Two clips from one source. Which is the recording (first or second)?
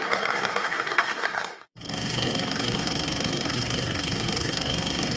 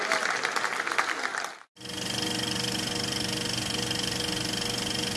second